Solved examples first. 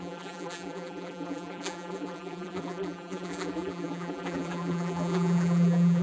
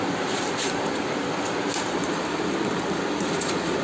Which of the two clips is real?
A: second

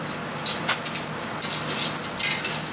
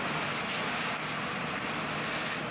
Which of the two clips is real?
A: first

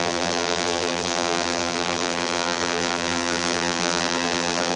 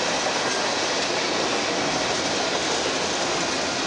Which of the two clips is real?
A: second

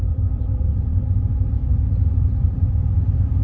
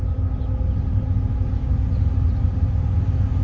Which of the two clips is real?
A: second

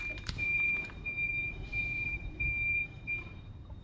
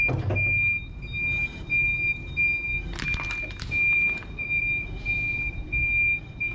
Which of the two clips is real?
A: second